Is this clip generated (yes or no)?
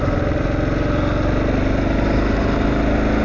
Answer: no